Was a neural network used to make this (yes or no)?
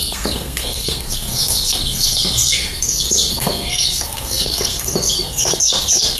yes